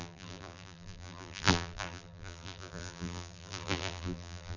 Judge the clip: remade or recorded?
remade